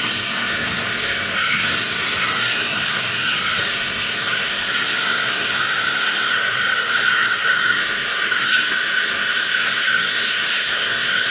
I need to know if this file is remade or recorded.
remade